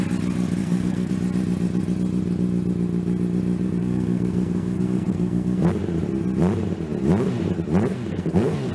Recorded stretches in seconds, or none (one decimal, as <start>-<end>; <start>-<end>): 0.0-0.6; 1.1-3.8; 5.7-7.9